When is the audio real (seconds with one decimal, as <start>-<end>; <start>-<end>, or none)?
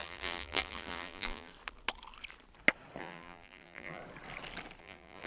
1.5-3.0; 4.0-4.8